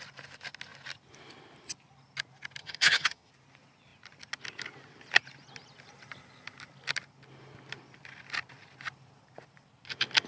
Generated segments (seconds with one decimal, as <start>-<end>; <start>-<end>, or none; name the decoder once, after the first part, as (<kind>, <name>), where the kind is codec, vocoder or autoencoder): 2.6-3.3 (vocoder, HiFi-GAN)

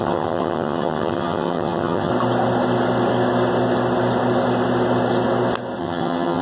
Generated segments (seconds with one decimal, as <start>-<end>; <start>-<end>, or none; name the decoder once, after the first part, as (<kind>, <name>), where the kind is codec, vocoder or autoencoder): 0.0-2.1 (vocoder, HiFi-GAN); 5.8-6.4